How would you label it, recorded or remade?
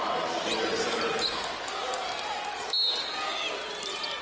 recorded